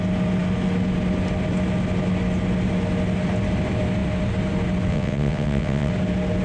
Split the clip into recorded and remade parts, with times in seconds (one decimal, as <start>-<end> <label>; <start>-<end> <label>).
0.0-4.9 recorded; 4.9-5.9 remade; 5.9-6.4 recorded